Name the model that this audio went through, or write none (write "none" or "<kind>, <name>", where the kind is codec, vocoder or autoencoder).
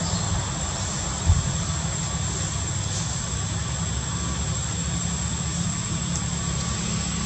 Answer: none